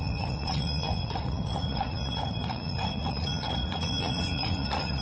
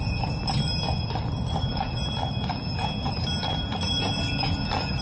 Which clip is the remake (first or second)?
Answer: first